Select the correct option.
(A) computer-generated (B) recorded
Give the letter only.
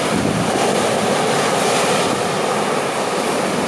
B